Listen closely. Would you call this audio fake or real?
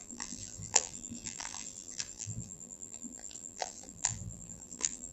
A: fake